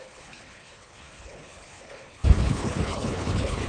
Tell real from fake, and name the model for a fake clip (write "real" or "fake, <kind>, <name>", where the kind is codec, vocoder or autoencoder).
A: fake, codec, HILCodec